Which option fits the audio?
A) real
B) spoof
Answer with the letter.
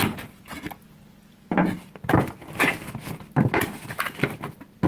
A